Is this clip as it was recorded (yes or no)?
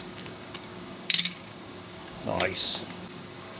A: no